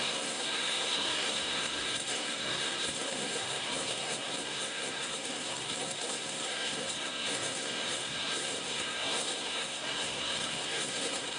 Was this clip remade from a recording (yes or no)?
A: yes